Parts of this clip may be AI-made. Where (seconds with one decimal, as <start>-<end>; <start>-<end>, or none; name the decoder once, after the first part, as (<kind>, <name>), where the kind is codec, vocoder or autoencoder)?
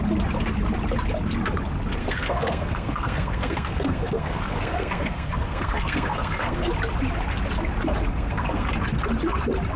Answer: 2.0-6.7 (codec, SNAC); 8.1-8.7